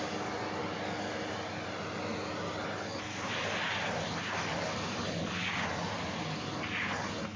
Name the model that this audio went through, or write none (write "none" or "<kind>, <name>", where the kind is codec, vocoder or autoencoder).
none